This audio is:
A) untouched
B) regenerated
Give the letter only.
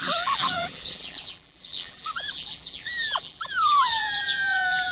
B